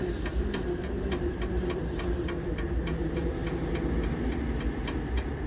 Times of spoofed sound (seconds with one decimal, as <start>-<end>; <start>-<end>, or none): 0.0-3.4; 3.9-5.5